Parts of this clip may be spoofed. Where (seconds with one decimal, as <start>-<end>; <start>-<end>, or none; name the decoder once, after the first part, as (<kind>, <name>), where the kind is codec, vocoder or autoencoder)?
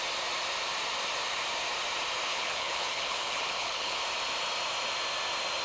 2.3-4.0 (codec, HILCodec)